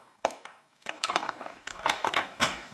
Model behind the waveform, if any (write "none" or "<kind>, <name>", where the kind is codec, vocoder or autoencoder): codec, DAC